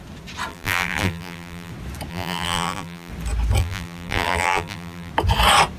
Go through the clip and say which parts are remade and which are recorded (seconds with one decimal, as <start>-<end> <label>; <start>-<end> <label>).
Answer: 0.0-0.5 recorded; 0.5-1.7 remade; 1.7-2.1 recorded; 2.1-3.1 remade; 3.1-3.6 recorded; 3.6-5.1 remade; 5.1-5.8 recorded